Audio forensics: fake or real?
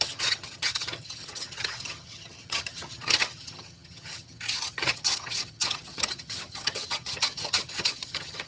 fake